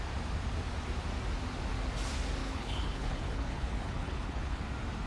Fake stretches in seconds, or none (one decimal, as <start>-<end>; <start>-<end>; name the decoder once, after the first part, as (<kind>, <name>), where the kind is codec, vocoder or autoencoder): 2.4-4.6 (codec, HILCodec)